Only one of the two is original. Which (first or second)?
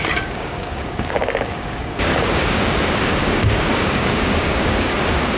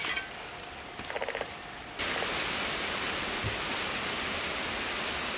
second